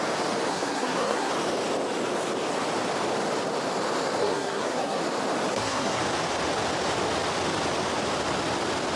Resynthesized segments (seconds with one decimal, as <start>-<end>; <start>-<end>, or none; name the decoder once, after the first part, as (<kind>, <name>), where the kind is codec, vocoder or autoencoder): 0.5-1.3 (codec, SNAC); 4.2-5.0; 5.5-6.0